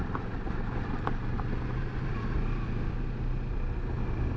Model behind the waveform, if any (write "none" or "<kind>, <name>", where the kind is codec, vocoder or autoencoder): none